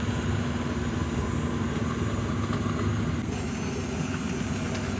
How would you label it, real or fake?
real